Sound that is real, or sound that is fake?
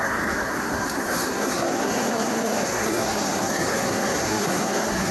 fake